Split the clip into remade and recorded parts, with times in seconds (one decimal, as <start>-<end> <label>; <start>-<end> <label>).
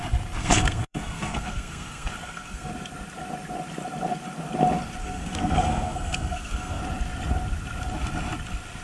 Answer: 0.0-0.4 recorded; 0.4-2.7 remade; 2.7-5.0 recorded; 5.0-6.8 remade; 6.8-8.8 recorded